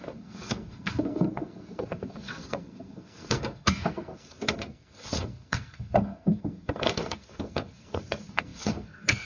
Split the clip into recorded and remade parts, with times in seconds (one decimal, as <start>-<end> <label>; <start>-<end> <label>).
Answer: 0.0-9.3 remade